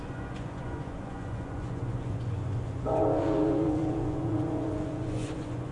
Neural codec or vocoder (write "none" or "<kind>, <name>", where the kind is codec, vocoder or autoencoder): vocoder, Vocos